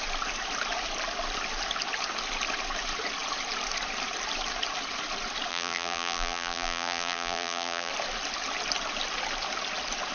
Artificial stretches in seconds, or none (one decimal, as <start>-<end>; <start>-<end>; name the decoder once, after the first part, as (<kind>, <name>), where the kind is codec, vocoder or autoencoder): 5.5-7.9 (vocoder, BigVGAN v2)